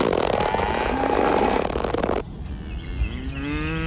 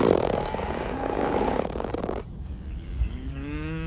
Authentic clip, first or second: first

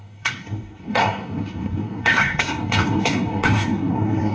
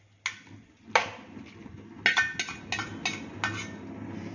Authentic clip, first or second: second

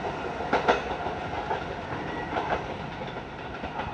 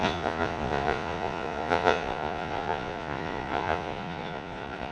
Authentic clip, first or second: first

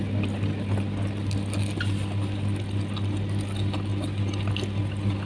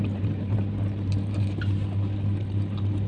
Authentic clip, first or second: first